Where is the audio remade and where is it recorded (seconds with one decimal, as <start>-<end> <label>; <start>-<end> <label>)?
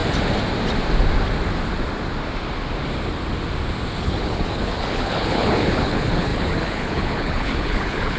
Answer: 0.0-4.0 recorded; 4.0-8.2 remade